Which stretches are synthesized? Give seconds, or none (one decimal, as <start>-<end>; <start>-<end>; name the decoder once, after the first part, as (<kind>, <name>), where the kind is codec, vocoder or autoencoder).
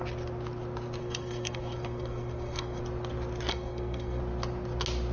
1.0-2.8 (codec, SNAC); 3.5-4.2